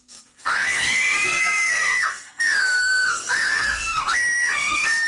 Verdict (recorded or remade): remade